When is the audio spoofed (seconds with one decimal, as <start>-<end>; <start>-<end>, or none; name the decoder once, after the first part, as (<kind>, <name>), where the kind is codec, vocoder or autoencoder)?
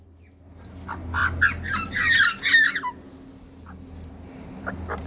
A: none